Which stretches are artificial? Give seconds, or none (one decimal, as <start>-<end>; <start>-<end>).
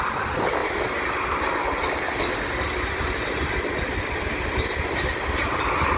none